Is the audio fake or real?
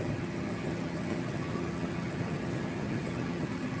fake